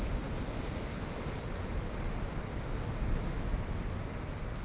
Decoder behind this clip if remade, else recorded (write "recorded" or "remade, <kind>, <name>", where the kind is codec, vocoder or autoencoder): recorded